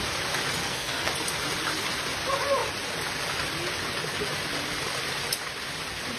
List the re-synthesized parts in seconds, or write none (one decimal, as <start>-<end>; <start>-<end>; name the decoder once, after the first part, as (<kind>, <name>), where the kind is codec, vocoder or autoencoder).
0.6-1.1 (codec, SNAC)